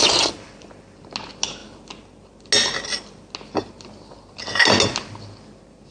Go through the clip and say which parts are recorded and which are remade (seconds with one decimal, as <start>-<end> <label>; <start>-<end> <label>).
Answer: 0.0-5.9 recorded